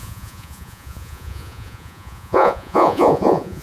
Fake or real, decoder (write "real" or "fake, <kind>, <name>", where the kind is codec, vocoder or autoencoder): fake, vocoder, Vocos